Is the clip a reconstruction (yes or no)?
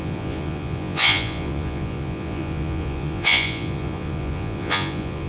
yes